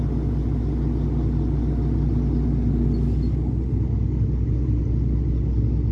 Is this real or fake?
real